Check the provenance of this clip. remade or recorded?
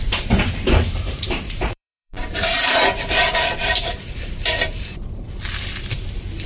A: remade